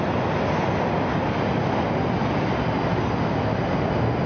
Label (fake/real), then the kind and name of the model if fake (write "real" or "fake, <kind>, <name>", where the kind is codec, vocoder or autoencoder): real